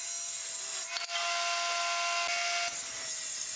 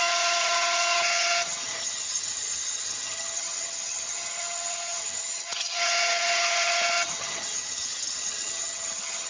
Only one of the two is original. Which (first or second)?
first